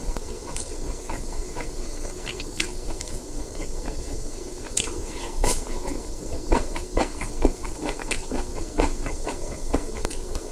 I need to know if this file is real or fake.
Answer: fake